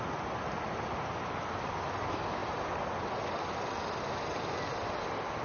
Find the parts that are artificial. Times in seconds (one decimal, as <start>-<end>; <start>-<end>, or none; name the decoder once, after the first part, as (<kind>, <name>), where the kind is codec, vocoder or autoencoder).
none